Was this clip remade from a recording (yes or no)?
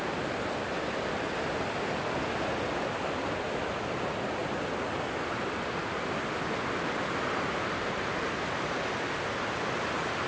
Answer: no